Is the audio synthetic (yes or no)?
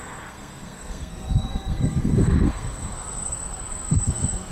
yes